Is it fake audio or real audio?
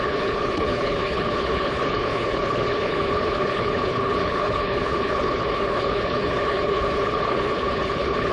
fake